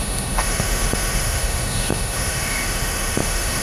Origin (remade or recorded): remade